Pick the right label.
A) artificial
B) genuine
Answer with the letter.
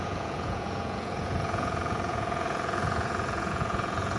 A